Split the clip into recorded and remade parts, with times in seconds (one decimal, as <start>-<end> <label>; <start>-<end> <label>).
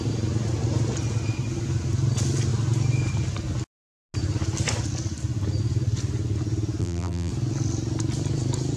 0.0-6.8 recorded; 6.8-7.3 remade; 7.3-8.8 recorded